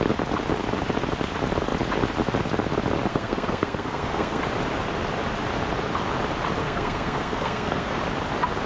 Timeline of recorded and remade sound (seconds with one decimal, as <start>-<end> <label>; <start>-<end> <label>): 0.0-3.1 recorded; 3.1-4.4 remade; 4.4-6.6 recorded; 6.6-8.0 remade; 8.0-8.7 recorded